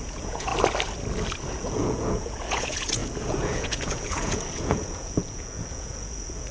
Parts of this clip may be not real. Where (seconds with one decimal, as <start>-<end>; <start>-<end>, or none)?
0.0-0.5; 1.5-6.5